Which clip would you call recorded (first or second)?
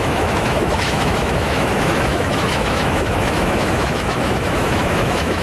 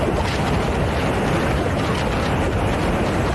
second